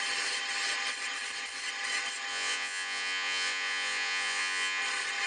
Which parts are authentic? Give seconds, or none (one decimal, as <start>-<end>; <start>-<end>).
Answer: 0.0-2.3; 4.8-5.3